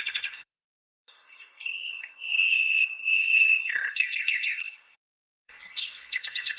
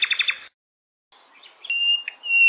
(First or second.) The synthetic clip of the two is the first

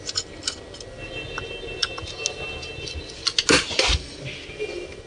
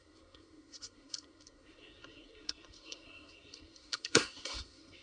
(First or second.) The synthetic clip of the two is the second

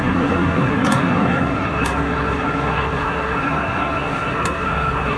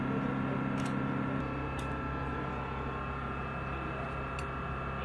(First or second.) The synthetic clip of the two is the first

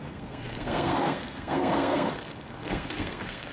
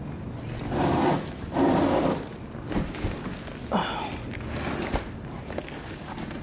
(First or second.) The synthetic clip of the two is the first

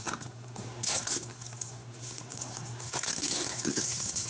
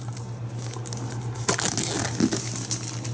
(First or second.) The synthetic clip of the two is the first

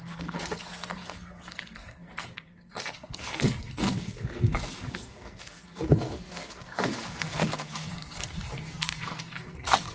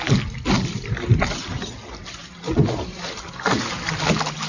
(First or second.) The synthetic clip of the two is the first